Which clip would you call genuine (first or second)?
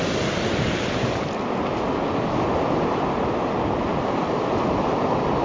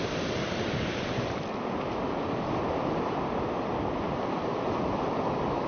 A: first